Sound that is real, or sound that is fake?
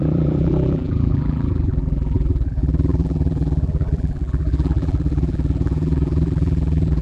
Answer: fake